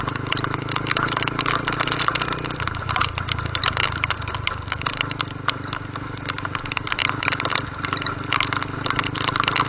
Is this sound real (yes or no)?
yes